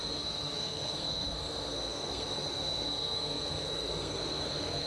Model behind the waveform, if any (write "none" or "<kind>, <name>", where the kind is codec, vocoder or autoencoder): codec, SNAC